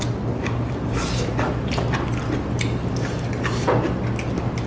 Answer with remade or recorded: recorded